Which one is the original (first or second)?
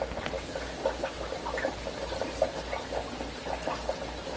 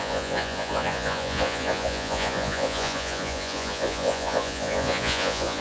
first